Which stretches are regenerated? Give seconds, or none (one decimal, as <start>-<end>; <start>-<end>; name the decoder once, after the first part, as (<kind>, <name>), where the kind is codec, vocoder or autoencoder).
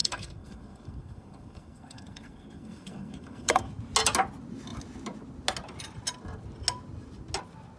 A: 0.0-3.7 (codec, SNAC)